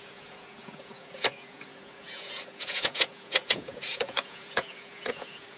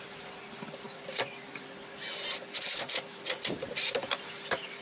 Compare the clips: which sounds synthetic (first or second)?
first